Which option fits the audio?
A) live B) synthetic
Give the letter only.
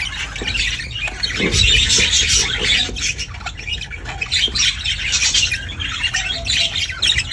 A